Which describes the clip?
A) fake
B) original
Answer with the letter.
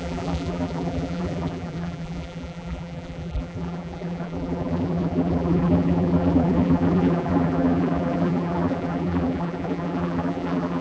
A